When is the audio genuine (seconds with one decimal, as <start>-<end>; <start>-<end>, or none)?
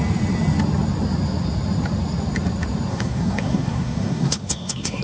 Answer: 0.0-2.9